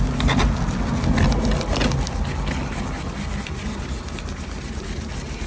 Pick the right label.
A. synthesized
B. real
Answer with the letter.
B